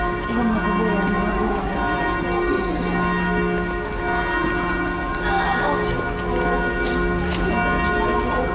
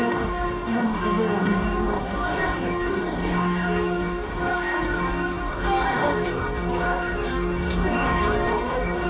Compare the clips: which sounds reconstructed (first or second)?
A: second